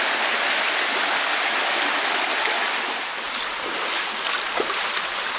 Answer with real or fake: real